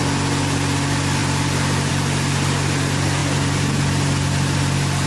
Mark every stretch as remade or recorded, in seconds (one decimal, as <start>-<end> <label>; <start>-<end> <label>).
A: 0.0-5.1 recorded